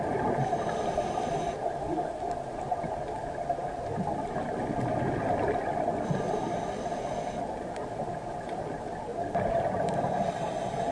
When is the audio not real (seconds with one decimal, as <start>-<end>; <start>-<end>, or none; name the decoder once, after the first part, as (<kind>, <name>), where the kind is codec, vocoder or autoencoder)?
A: none

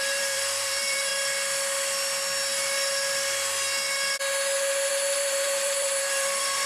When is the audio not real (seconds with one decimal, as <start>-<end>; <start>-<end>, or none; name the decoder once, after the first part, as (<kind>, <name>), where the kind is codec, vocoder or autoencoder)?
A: 0.0-1.1 (vocoder, BigVGAN v2); 4.9-6.7

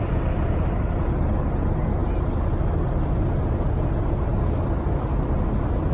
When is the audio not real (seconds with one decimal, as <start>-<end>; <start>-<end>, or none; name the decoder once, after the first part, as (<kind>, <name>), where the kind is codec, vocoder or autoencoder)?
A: none

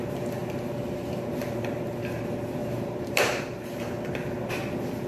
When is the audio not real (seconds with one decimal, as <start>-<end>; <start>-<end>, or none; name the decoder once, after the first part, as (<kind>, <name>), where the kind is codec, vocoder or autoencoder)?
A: 0.4-2.2 (vocoder, BigVGAN v2); 2.6-4.1

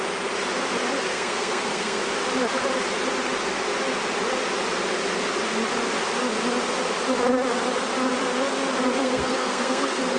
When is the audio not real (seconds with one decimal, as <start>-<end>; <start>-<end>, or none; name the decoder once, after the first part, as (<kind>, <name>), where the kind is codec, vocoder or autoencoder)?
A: 1.1-2.0 (codec, SNAC); 9.0-10.2

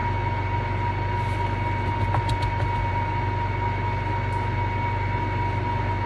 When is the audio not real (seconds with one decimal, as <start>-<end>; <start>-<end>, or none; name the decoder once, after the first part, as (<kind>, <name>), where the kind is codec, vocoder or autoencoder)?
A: none